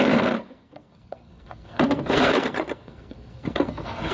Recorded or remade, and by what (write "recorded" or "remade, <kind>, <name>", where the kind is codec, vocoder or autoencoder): remade, codec, SNAC